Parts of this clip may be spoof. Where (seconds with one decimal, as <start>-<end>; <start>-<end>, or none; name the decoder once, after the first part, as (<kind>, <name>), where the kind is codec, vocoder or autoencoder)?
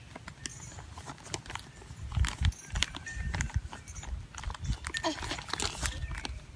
none